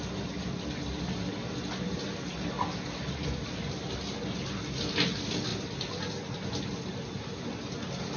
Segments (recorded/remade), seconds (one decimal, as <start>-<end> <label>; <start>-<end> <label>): 0.0-8.2 recorded